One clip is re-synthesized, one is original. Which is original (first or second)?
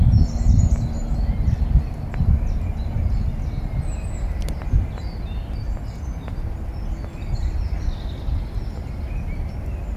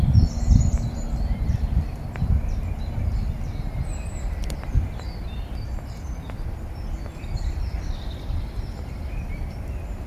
first